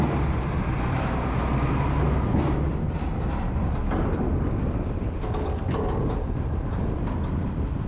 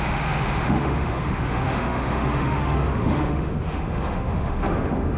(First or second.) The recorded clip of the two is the first